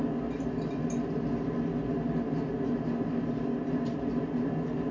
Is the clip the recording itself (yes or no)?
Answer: yes